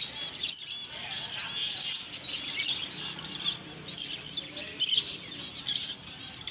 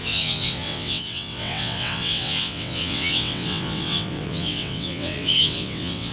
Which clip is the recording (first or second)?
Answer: first